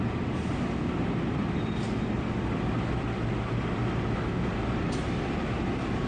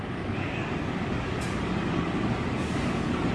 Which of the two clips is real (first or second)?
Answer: first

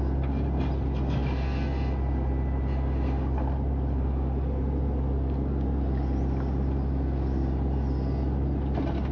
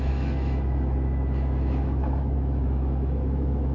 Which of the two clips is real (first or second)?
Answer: first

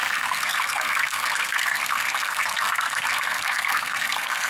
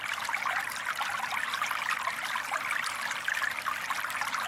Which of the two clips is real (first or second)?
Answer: second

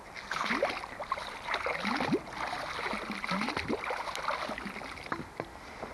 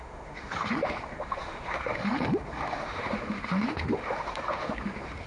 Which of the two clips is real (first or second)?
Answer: first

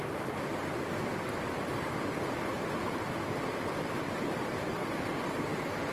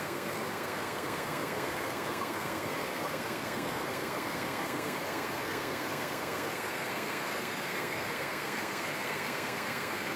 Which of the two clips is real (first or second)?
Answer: first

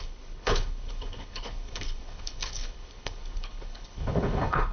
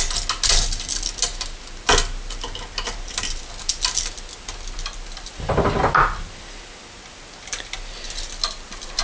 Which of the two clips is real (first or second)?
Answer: second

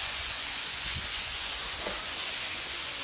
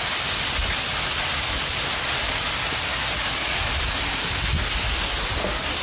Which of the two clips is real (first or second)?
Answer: second